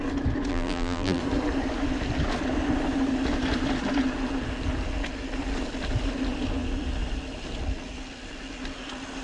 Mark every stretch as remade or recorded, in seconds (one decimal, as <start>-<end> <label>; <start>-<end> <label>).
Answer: 0.0-0.5 recorded; 0.5-1.2 remade; 1.2-9.2 recorded